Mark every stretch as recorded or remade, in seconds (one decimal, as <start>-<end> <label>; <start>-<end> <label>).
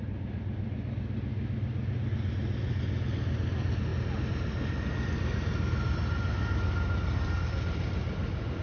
0.0-8.6 recorded